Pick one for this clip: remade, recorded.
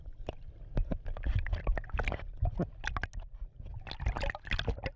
recorded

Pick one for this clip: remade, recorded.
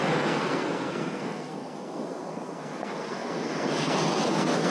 remade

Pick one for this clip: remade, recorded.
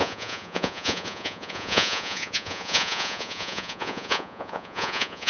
remade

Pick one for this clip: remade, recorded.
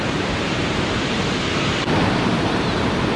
remade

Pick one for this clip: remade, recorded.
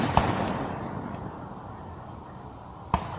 recorded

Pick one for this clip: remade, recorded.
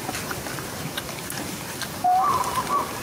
recorded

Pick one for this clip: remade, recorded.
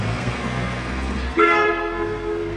remade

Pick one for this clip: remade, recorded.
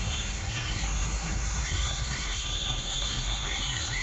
remade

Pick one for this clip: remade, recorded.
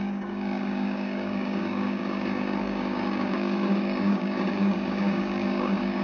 remade